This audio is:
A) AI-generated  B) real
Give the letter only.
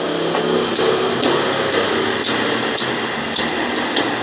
B